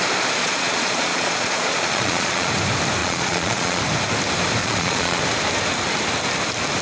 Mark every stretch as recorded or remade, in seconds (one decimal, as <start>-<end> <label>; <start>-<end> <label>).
0.0-0.4 recorded; 0.4-2.5 remade; 2.5-3.0 recorded; 3.0-3.8 remade; 3.8-4.6 recorded; 4.6-5.2 remade; 5.2-6.8 recorded